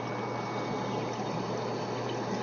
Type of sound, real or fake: real